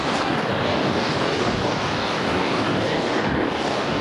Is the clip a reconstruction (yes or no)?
yes